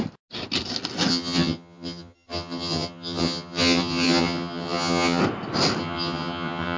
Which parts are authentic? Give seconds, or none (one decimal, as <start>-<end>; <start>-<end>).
0.0-1.1; 5.2-5.8